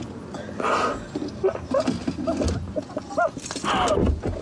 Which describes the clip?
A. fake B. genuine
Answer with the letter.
B